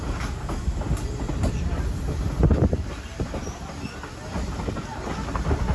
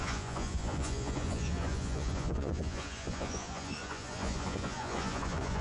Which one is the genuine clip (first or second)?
first